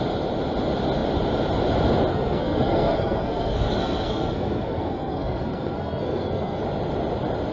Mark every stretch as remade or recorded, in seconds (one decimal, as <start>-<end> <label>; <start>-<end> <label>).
0.0-2.1 recorded; 2.1-6.6 remade; 6.6-7.5 recorded